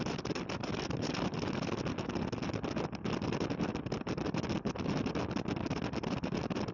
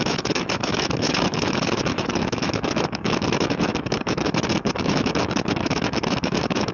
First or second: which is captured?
first